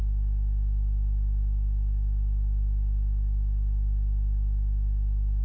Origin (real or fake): real